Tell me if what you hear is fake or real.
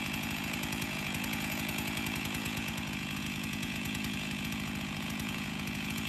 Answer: fake